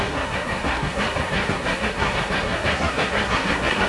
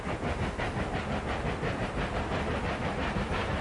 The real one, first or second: second